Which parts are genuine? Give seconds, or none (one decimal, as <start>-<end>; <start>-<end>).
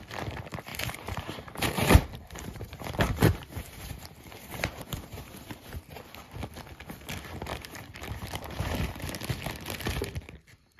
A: 0.0-0.7; 5.9-7.5; 9.2-10.8